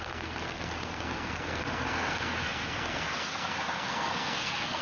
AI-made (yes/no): yes